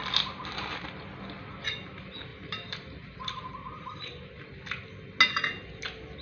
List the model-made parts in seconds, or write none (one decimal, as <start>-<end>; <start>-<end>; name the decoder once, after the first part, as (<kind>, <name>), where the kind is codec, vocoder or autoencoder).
2.3-3.9 (vocoder, BigVGAN v2)